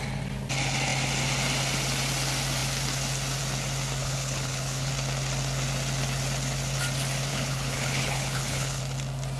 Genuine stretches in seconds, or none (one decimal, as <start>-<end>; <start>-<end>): 0.0-4.0; 4.9-7.3; 8.8-9.4